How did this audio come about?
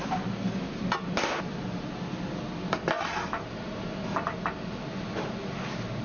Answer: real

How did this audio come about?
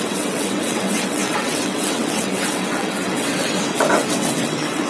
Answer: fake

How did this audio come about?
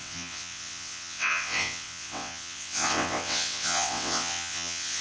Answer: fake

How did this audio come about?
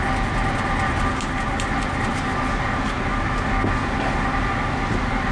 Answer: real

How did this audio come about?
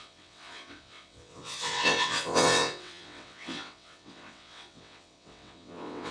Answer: fake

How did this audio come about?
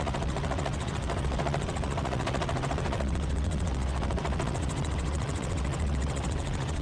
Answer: fake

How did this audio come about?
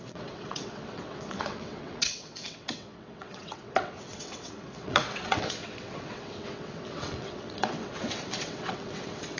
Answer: fake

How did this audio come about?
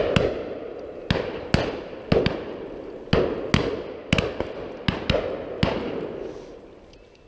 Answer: real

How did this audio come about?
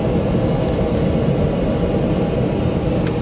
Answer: real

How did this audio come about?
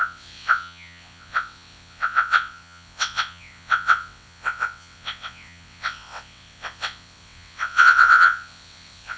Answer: fake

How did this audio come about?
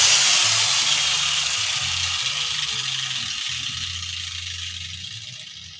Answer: real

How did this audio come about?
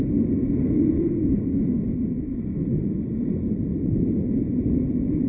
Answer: real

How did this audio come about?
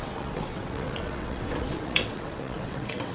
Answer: fake